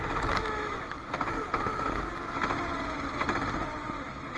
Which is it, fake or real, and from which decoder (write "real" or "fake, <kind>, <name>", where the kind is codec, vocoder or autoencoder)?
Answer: real